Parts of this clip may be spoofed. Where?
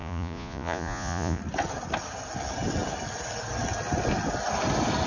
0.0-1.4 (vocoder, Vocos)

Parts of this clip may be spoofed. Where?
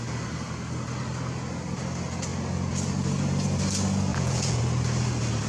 4.1-4.6 (vocoder, Vocos)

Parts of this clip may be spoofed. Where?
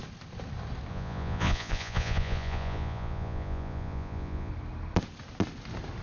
0.9-4.5 (vocoder, Vocos)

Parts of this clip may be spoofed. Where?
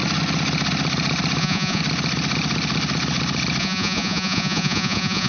1.4-1.8 (vocoder, Vocos); 3.6-5.3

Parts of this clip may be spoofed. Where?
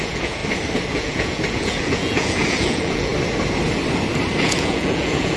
0.0-0.4 (vocoder, Vocos); 0.9-3.1; 4.4-5.4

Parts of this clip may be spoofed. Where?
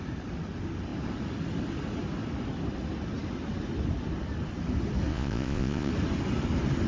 5.1-5.9 (vocoder, Vocos)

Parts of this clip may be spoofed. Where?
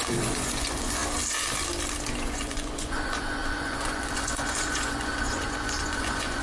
0.0-1.0 (vocoder, Vocos); 2.2-6.4